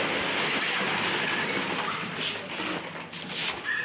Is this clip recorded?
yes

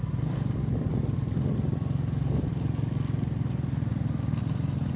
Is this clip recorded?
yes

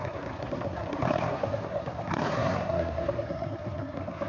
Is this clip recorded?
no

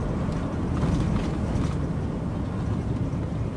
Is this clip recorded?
yes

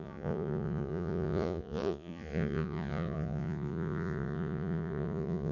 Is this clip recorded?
no